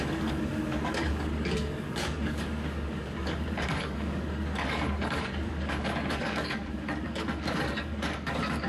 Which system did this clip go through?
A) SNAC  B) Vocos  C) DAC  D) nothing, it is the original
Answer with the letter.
C